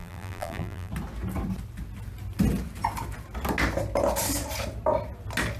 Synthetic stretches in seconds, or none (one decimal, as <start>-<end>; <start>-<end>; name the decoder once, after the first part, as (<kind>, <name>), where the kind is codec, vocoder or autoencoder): 0.0-0.9 (vocoder, BigVGAN v2)